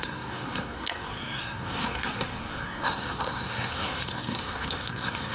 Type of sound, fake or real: fake